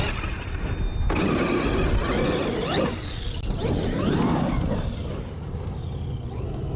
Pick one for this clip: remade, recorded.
recorded